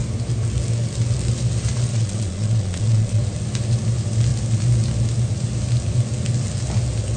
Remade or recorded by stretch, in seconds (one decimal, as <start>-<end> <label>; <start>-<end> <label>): 0.0-1.9 recorded; 1.9-3.2 remade; 3.2-7.2 recorded